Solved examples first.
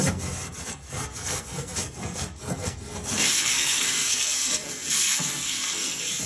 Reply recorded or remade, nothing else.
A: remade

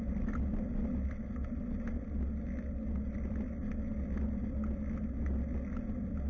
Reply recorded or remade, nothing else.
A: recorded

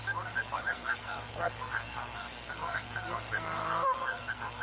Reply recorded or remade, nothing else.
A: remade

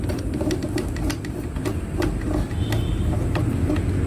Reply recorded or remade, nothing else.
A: recorded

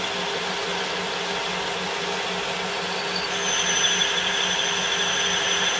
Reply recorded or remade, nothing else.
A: recorded